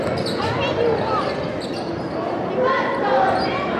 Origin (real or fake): real